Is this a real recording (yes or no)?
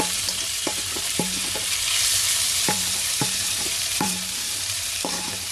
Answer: no